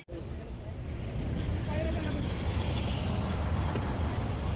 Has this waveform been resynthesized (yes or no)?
no